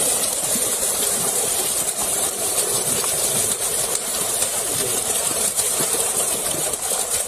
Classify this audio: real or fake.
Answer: fake